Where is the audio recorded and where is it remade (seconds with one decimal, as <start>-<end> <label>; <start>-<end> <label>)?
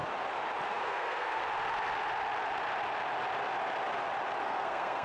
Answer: 0.0-0.7 recorded; 0.7-1.4 remade; 1.4-4.4 recorded; 4.4-5.0 remade